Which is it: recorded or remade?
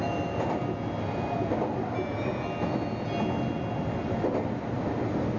recorded